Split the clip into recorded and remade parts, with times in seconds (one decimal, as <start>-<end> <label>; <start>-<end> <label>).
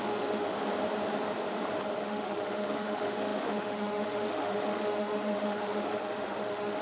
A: 0.0-0.5 remade; 0.5-2.0 recorded; 2.0-6.8 remade